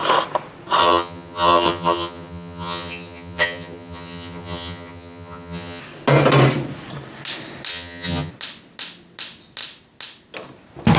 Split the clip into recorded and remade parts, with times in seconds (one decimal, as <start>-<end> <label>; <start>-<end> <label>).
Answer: 0.0-0.8 recorded; 0.8-5.8 remade; 5.8-7.7 recorded; 7.7-8.3 remade; 8.3-11.0 recorded

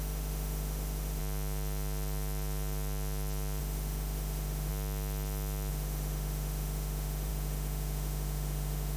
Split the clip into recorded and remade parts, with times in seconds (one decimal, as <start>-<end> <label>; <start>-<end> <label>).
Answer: 0.0-1.2 remade; 1.2-3.6 recorded; 3.6-4.7 remade; 4.7-5.7 recorded; 5.7-9.0 remade

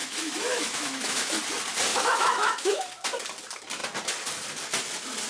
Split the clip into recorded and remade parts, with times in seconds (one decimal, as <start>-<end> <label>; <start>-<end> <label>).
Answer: 0.0-1.4 remade; 1.4-1.9 recorded; 1.9-2.8 remade; 2.8-5.3 recorded

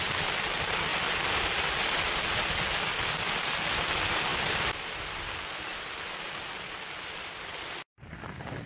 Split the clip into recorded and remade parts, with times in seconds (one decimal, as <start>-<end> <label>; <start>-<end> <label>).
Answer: 0.0-8.7 recorded

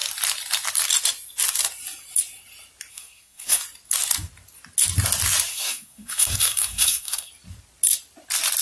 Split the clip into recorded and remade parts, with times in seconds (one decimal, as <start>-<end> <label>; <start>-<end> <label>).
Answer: 0.0-2.9 recorded; 2.9-3.6 remade; 3.6-5.5 recorded; 5.5-7.3 remade; 7.3-8.6 recorded

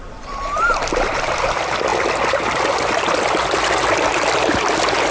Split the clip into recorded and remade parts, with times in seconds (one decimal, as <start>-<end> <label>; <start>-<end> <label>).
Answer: 0.0-5.1 remade

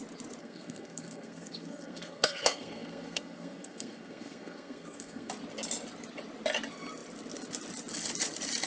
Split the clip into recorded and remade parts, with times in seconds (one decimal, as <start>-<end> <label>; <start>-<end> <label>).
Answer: 0.0-0.4 recorded; 0.4-5.3 remade; 5.3-8.7 recorded

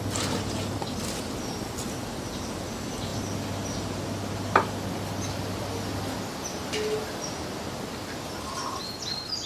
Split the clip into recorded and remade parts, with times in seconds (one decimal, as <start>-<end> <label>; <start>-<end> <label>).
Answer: 0.0-9.5 recorded